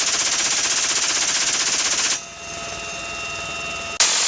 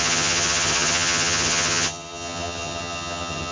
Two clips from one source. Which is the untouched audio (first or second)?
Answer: first